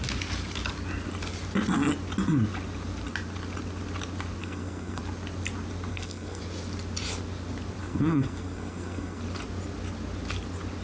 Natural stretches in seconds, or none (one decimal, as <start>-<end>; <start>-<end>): 0.0-4.4; 5.0-5.9; 6.4-7.8; 9.2-10.8

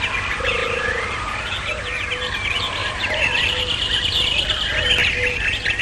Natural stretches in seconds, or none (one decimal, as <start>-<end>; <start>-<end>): 0.0-0.6; 1.4-2.8; 3.6-5.8